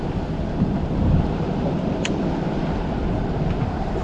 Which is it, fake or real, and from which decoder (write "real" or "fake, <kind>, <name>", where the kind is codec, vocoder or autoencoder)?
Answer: real